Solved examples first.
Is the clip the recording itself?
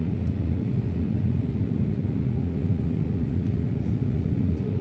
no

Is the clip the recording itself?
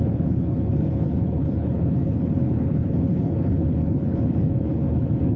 no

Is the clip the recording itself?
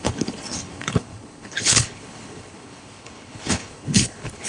no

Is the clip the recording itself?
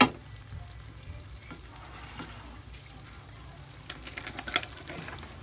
yes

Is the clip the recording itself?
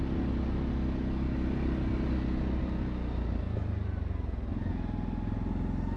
yes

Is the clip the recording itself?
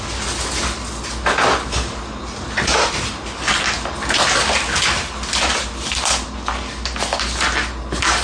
yes